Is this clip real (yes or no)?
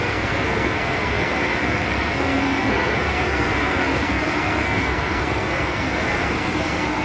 no